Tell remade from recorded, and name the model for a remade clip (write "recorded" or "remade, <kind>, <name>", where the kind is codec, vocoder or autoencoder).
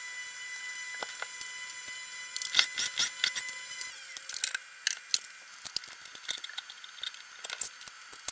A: recorded